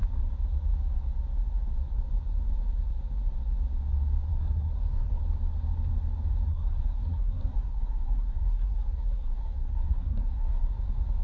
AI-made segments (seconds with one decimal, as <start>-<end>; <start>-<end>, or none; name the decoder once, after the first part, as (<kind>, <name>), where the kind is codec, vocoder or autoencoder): 4.3-5.2 (codec, SNAC); 6.5-10.7